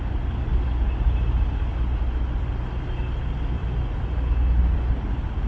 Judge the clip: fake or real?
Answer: real